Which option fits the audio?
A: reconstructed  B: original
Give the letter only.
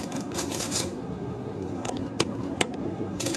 A